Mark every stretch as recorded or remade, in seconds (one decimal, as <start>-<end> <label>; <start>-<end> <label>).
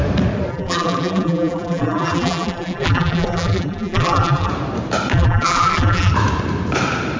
0.0-0.5 recorded; 0.5-4.5 remade; 4.5-5.1 recorded; 5.1-6.1 remade; 6.1-7.2 recorded